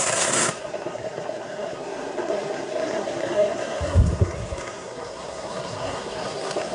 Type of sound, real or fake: fake